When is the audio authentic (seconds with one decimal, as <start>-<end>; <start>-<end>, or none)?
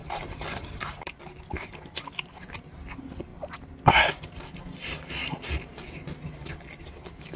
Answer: 1.2-5.2; 5.8-7.4